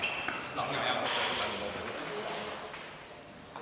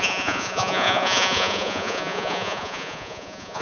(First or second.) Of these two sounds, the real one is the first